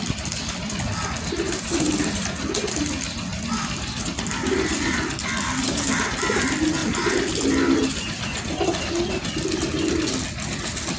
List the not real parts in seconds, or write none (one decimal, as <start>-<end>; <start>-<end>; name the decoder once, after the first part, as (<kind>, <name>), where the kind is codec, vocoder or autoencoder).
none